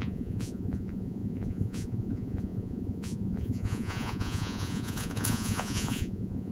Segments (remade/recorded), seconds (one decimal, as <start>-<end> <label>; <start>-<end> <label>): 0.0-6.5 remade